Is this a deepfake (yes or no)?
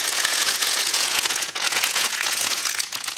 yes